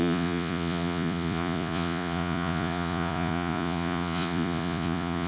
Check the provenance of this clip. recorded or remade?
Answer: remade